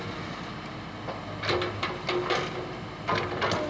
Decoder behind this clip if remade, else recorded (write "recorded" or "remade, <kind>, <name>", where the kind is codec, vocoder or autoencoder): recorded